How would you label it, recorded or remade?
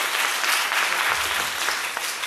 recorded